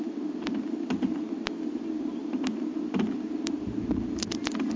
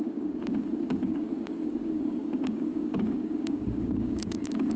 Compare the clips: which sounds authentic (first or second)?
first